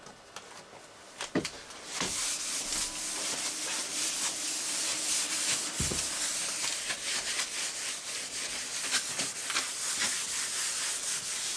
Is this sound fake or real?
real